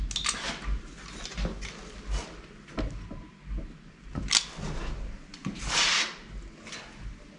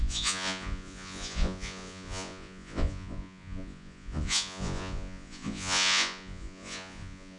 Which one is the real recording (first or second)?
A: first